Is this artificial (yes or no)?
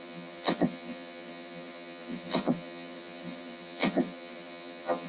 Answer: yes